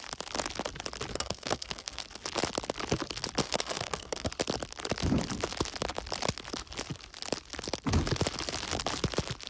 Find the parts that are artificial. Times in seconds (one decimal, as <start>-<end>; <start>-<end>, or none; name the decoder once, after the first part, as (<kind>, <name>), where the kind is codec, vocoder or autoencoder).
1.1-2.0 (codec, SNAC); 3.4-4.3